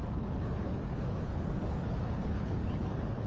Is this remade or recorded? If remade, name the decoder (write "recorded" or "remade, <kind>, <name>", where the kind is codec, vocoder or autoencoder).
remade, codec, HILCodec